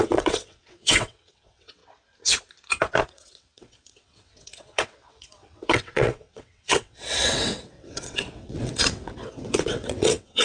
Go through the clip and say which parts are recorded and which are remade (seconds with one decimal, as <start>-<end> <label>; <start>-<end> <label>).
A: 0.0-1.8 remade; 1.8-3.0 recorded; 3.0-10.4 remade